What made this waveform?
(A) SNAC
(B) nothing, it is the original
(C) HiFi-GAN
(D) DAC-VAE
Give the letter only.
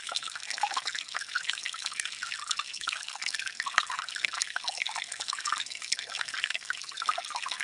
A